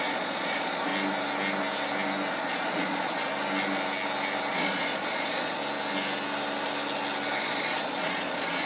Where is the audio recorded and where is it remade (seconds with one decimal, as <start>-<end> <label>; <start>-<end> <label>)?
0.0-0.9 remade; 0.9-2.3 recorded; 2.3-3.3 remade; 3.3-4.5 recorded; 4.5-5.6 remade; 5.6-7.4 recorded; 7.4-8.7 remade